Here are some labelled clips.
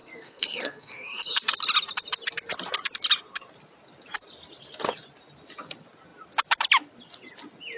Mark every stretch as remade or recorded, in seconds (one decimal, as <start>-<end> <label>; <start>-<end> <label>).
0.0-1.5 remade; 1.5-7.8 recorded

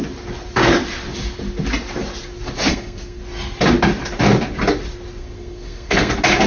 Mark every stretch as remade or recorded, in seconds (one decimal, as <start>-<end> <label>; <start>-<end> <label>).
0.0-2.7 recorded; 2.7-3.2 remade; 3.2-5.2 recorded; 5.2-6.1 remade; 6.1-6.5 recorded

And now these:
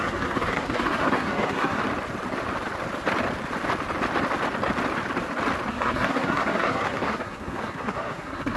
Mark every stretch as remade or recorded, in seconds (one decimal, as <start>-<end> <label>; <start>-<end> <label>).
0.0-1.8 remade; 1.8-5.7 recorded; 5.7-8.6 remade

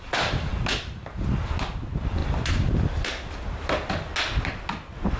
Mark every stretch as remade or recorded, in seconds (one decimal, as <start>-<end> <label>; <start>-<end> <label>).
0.0-5.2 recorded

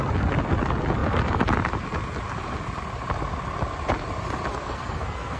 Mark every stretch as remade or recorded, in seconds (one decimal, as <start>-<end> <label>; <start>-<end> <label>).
0.0-4.5 recorded; 4.5-5.4 remade